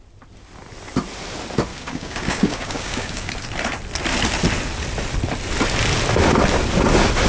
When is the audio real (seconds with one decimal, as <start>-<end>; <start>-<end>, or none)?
0.0-1.7; 3.3-7.3